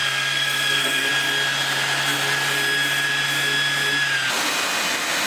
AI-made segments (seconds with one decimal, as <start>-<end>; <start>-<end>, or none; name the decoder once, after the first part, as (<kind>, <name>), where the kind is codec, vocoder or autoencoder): 0.0-1.1 (codec, SNAC)